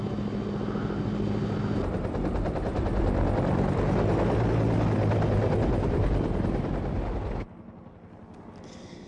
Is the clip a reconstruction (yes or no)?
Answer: no